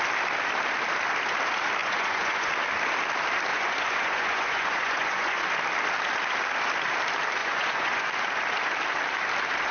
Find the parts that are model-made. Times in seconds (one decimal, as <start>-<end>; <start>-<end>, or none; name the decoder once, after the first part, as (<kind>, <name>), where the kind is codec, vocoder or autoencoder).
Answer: 1.8-2.5 (vocoder, Vocos); 3.5-5.4; 7.4-8.1